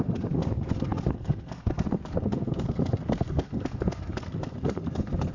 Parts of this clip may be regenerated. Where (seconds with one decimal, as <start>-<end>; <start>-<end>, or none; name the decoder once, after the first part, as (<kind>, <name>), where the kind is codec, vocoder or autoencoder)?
0.0-5.3 (codec, SNAC)